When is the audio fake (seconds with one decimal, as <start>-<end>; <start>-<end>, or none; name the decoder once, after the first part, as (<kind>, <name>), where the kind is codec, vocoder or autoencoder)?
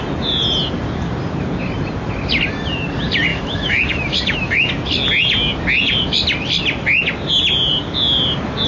3.3-4.7 (autoencoder, DAC-VAE)